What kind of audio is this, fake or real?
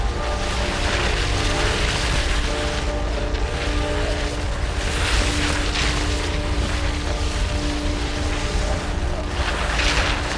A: real